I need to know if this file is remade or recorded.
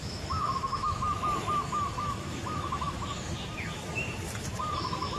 remade